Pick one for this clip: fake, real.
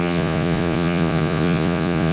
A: fake